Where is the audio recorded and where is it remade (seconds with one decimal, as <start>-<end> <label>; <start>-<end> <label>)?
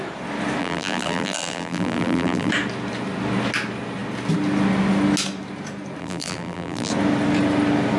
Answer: 0.0-0.6 recorded; 0.6-2.5 remade; 2.5-6.0 recorded; 6.0-6.9 remade; 6.9-8.0 recorded